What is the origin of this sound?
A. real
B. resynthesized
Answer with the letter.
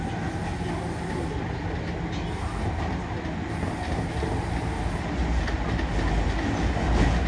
A